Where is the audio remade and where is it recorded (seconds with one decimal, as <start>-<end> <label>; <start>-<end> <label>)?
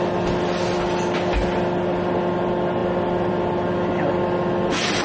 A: 0.0-5.0 recorded